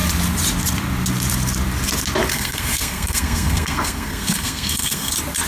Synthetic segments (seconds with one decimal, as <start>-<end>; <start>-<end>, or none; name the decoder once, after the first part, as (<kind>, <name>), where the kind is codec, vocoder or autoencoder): 2.3-5.1 (codec, SNAC)